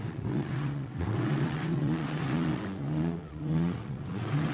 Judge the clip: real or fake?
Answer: fake